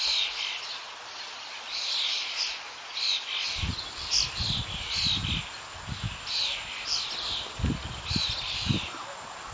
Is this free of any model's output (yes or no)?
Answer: yes